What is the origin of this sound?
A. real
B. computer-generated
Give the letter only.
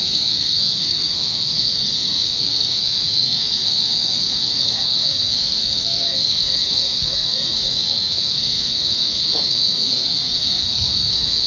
B